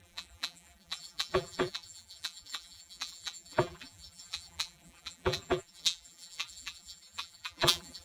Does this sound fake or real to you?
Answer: fake